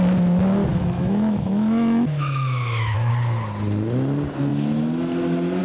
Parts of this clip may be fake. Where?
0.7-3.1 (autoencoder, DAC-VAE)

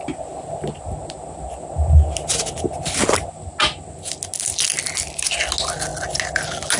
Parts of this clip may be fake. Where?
none

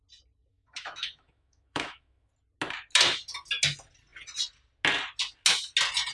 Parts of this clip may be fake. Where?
0.5-2.3 (autoencoder, DAC-VAE)

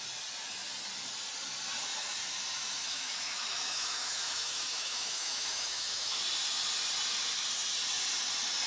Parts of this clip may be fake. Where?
2.8-6.2 (autoencoder, DAC-VAE)

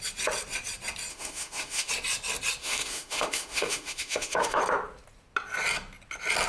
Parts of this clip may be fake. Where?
1.1-1.9 (autoencoder, DAC-VAE); 2.6-4.6

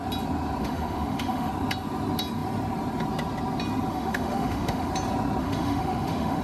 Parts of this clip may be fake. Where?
0.6-1.5 (autoencoder, DAC-VAE); 3.9-4.9; 5.4-6.4